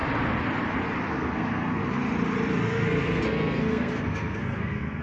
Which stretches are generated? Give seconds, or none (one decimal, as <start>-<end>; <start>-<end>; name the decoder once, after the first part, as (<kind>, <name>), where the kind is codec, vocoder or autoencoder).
1.1-1.8 (codec, SNAC); 2.6-5.0